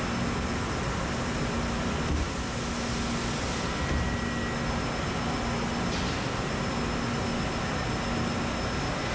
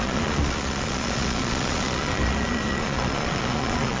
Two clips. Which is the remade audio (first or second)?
second